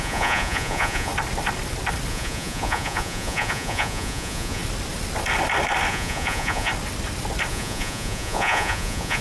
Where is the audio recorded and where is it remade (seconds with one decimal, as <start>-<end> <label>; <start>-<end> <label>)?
0.0-1.1 remade; 1.1-2.1 recorded; 2.1-4.6 remade; 4.6-5.9 recorded; 5.9-6.7 remade; 6.7-7.5 recorded; 7.5-9.2 remade